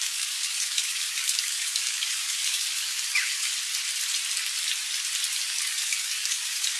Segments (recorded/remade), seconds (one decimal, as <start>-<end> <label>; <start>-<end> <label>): 0.0-3.5 remade; 3.5-5.4 recorded; 5.4-6.8 remade